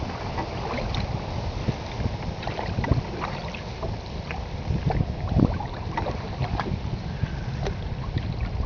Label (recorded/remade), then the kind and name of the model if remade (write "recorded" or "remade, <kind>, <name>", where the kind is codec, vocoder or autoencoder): recorded